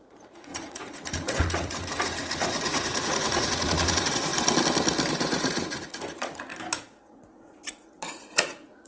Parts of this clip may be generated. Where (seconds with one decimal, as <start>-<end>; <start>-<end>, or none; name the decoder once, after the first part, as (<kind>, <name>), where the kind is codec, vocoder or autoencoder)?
0.0-4.3 (vocoder, Vocos); 5.1-6.5; 7.1-8.9